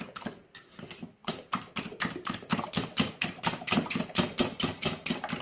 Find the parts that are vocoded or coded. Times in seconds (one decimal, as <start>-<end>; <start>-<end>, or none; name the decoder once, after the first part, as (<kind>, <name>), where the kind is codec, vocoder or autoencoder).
1.2-4.4 (vocoder, BigVGAN v2)